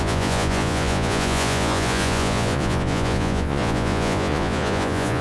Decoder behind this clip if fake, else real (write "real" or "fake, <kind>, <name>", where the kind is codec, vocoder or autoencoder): fake, vocoder, Vocos